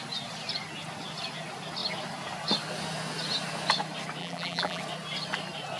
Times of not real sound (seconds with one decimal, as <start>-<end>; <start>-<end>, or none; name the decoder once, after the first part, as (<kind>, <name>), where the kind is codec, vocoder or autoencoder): 4.2-4.8 (vocoder, BigVGAN v2)